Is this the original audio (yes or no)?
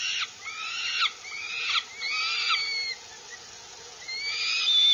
yes